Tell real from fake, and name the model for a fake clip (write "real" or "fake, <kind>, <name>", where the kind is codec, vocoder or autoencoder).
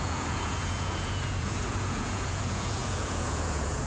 fake, vocoder, Vocos